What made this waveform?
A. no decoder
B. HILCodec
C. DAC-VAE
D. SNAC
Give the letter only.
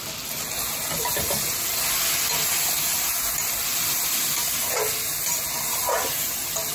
A